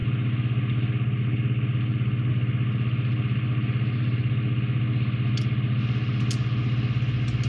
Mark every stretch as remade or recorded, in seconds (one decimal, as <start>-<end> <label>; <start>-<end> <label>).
0.0-7.5 recorded